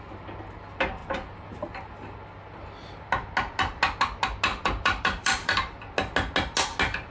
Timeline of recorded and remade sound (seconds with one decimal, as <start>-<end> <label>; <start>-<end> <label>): 0.0-4.5 recorded; 4.5-5.8 remade; 5.8-7.1 recorded